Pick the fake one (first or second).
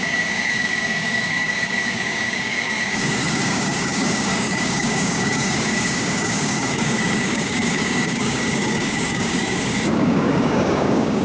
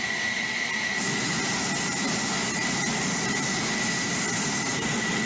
first